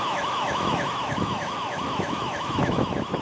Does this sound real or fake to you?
fake